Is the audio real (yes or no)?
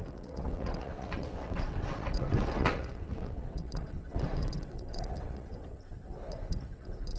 no